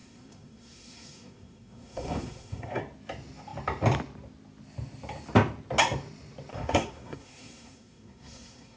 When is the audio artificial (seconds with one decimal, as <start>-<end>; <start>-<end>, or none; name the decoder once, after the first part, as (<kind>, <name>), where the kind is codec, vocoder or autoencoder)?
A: 0.0-2.8 (codec, SNAC); 6.5-8.8